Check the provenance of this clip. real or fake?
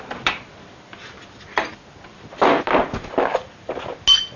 real